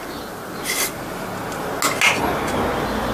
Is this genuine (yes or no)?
yes